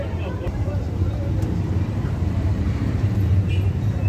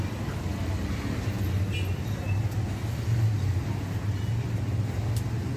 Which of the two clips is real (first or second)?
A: second